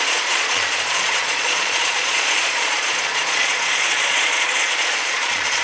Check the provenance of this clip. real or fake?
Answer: fake